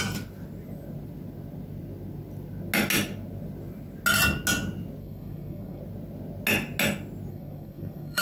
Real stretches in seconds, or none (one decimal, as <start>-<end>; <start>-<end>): 0.0-5.0; 5.8-7.3

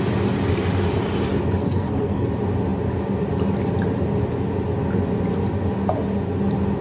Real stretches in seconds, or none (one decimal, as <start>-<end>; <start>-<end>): 0.0-1.6; 2.3-6.8